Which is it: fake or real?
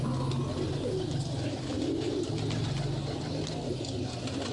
real